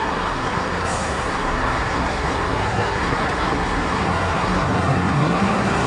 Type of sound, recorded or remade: remade